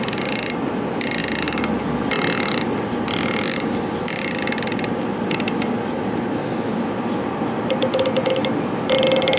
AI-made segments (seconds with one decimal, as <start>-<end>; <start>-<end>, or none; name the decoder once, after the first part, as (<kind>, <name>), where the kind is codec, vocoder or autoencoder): none